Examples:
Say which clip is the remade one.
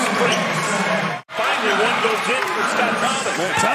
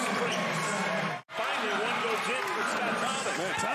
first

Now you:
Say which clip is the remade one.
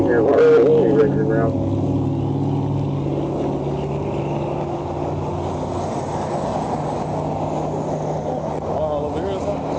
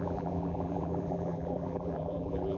second